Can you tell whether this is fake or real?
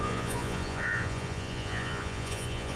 fake